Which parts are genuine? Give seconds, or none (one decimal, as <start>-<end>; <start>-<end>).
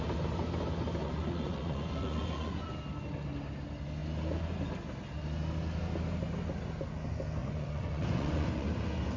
0.0-1.0; 2.7-7.4; 8.7-9.2